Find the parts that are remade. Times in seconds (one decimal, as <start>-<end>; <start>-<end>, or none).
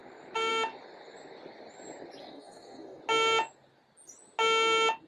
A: 2.2-3.0